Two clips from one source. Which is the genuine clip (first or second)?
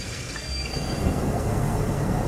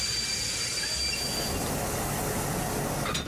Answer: second